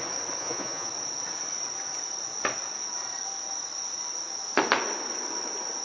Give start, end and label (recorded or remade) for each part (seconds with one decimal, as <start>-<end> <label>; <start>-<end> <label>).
0.0-0.4 recorded; 0.4-0.9 remade; 0.9-5.8 recorded

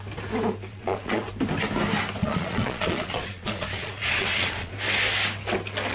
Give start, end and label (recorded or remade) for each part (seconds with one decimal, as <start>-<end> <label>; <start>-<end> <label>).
0.0-0.7 recorded; 0.7-1.3 remade; 1.3-2.2 recorded; 2.2-4.7 remade; 4.7-5.9 recorded

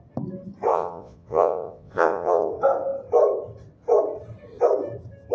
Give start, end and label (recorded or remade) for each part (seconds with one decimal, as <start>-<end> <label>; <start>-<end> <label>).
0.0-0.7 recorded; 0.7-2.5 remade; 2.5-5.3 recorded